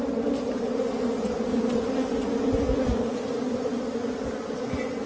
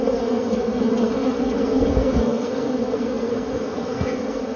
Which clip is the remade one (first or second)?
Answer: second